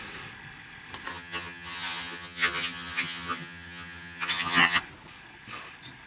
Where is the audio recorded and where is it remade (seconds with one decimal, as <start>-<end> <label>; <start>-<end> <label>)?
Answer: 0.0-1.1 recorded; 1.1-4.8 remade; 4.8-6.1 recorded